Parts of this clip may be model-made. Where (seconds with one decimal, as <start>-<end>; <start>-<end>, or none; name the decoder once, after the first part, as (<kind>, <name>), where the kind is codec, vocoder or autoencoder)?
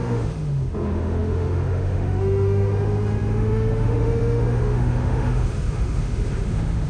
0.0-6.9 (autoencoder, DAC-VAE)